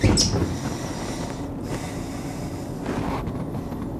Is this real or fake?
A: real